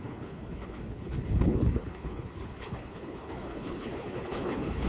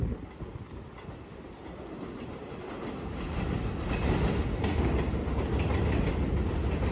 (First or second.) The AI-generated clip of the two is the first